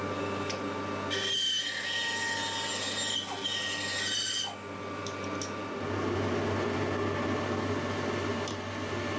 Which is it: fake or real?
real